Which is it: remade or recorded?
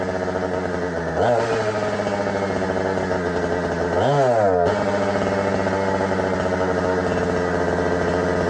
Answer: recorded